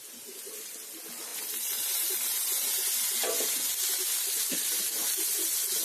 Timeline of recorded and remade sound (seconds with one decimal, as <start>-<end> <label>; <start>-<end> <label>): 0.0-5.8 recorded